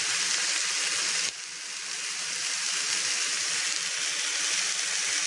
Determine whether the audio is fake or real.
real